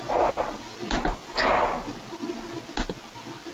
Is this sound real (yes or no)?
yes